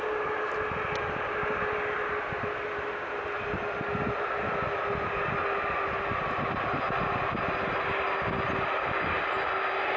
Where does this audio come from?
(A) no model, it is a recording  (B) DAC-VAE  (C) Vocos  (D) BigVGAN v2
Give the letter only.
A